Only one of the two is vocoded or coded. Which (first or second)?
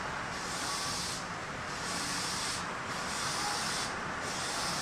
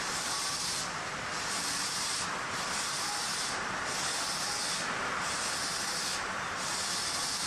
second